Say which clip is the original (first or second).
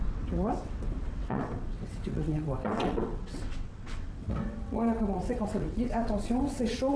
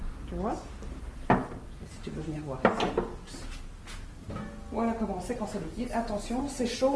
second